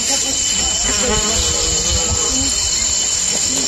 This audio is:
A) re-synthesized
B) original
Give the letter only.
B